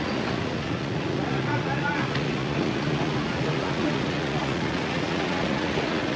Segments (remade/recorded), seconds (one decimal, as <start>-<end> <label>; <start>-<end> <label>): 0.0-6.2 remade